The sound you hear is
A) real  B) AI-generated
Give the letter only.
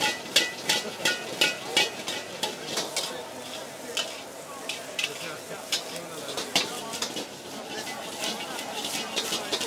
A